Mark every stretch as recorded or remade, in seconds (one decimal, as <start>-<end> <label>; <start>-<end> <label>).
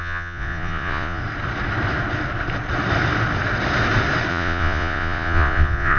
0.0-1.2 remade; 1.2-4.3 recorded; 4.3-6.0 remade